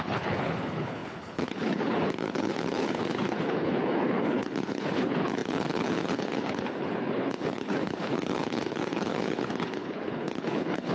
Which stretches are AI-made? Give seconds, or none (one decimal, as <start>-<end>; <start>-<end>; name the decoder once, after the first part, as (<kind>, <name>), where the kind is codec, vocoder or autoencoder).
0.0-10.9 (codec, HILCodec)